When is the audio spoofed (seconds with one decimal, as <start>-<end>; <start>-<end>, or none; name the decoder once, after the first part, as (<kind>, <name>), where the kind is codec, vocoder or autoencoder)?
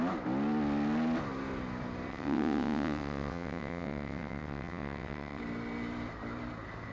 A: 2.1-5.4 (vocoder, WaveNeXt)